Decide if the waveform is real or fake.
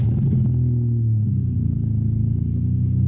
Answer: fake